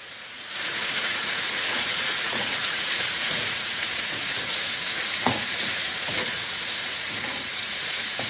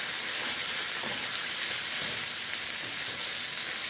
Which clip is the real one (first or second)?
second